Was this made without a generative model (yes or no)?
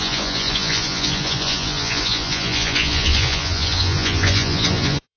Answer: no